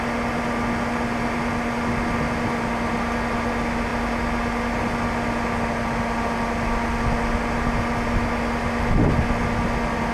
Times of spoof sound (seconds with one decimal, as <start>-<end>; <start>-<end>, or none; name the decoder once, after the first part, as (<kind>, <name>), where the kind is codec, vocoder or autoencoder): none